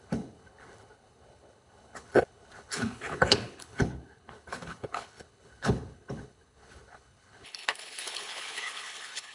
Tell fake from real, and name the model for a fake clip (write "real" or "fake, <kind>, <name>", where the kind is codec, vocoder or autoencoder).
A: fake, codec, HILCodec